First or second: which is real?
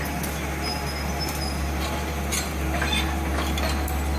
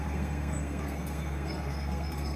first